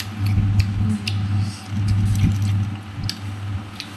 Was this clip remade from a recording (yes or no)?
no